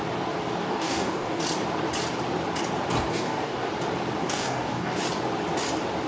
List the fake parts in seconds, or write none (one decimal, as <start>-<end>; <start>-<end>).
0.6-1.4; 3.1-3.7; 4.2-5.0